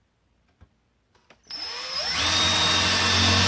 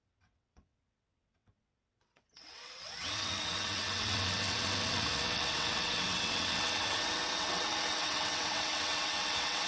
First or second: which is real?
first